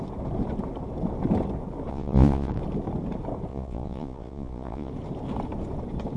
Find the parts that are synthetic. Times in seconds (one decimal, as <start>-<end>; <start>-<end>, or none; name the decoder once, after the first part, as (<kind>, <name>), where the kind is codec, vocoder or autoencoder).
1.9-2.5 (vocoder, Vocos); 3.5-4.9